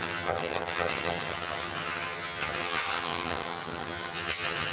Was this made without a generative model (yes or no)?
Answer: no